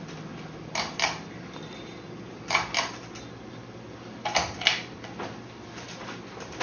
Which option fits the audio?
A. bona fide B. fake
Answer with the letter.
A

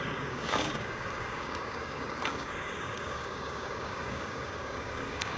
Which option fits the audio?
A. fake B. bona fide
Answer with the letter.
A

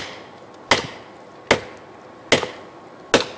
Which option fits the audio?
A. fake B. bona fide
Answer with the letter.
B